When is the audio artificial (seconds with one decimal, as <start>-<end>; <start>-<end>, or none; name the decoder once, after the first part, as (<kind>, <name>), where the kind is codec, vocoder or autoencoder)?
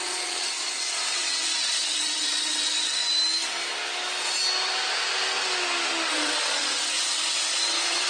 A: 0.0-3.0 (vocoder, WaveNeXt); 6.1-8.1